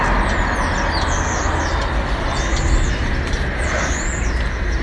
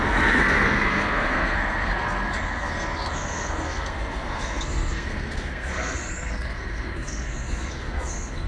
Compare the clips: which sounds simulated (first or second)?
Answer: second